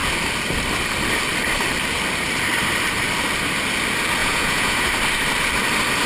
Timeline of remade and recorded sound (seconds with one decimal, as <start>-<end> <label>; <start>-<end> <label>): 0.0-4.2 recorded; 4.2-4.9 remade; 4.9-6.1 recorded

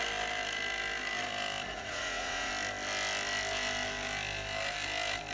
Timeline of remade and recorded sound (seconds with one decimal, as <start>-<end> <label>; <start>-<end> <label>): 0.0-1.7 recorded; 1.7-2.5 remade; 2.5-5.3 recorded

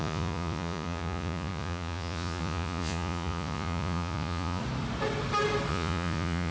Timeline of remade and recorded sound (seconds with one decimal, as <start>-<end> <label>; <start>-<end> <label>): 0.0-4.6 remade; 4.6-5.7 recorded; 5.7-6.5 remade

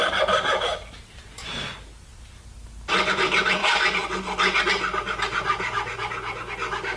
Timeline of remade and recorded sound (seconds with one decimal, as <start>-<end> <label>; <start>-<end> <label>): 0.0-7.0 recorded

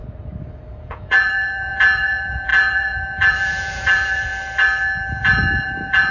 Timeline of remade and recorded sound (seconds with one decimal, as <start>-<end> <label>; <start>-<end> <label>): 0.0-0.8 recorded; 0.8-4.3 remade; 4.3-5.2 recorded; 5.2-6.1 remade

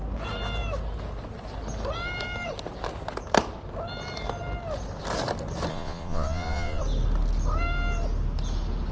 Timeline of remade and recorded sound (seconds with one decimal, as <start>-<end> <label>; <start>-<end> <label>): 0.0-5.7 recorded; 5.7-6.8 remade; 6.8-8.9 recorded

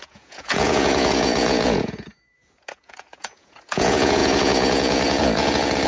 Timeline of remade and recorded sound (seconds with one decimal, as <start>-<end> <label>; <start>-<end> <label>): 0.0-5.9 remade